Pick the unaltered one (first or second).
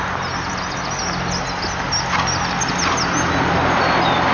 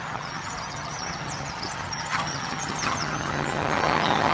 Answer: first